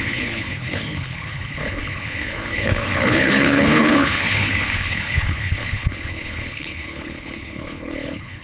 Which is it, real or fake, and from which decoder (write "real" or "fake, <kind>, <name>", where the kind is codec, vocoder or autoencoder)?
fake, codec, HILCodec